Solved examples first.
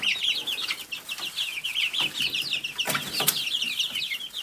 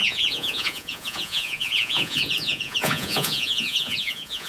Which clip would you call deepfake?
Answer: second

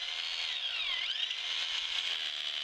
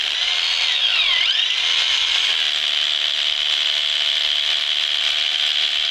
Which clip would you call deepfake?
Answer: second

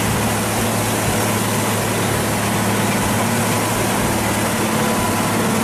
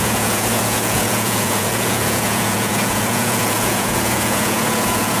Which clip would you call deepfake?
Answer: second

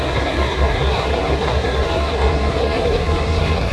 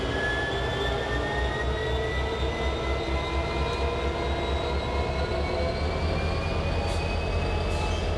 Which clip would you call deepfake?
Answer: first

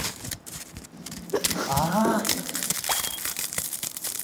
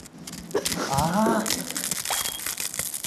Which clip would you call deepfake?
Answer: first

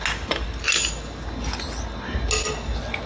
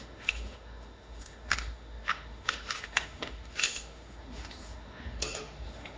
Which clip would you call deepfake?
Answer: second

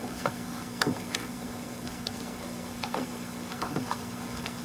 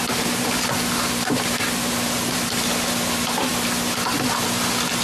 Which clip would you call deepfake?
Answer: first